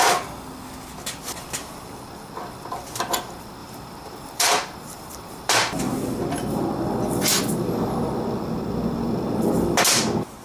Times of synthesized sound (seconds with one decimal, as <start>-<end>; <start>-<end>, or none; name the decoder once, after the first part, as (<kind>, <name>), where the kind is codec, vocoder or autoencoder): 3.6-5.8 (vocoder, BigVGAN v2)